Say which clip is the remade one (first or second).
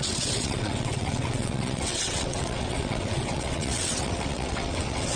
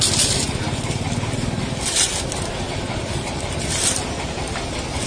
first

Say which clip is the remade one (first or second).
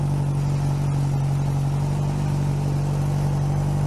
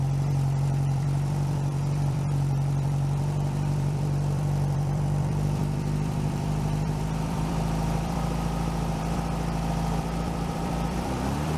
second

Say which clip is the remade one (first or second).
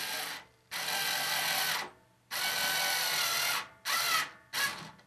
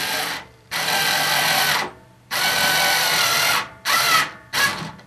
second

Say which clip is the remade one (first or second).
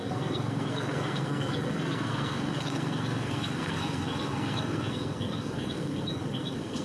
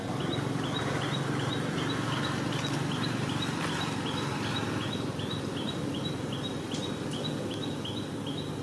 first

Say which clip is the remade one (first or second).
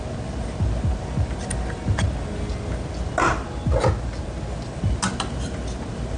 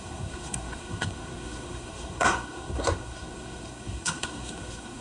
second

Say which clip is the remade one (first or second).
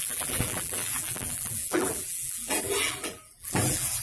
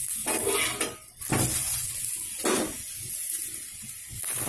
first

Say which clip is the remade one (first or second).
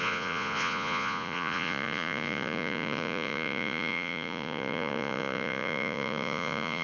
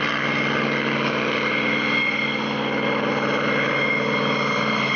first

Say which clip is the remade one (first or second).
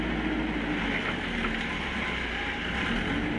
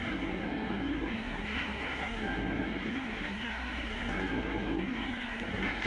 second